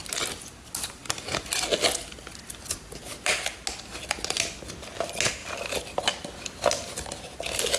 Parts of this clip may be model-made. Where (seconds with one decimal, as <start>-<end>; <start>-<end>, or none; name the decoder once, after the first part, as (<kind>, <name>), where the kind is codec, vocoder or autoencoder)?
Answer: none